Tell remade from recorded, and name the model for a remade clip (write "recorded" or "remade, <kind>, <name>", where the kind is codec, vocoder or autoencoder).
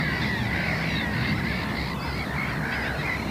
recorded